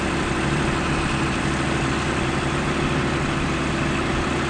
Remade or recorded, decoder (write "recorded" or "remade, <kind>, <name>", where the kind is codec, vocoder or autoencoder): recorded